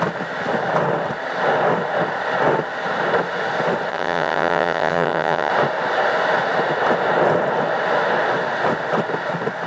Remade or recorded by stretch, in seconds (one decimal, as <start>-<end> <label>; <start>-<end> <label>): 0.0-3.9 recorded; 3.9-5.5 remade; 5.5-9.7 recorded